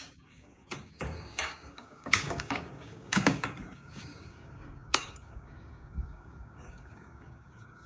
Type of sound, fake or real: fake